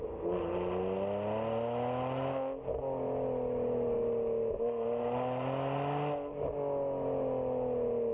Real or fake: real